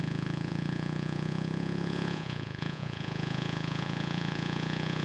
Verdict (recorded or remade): remade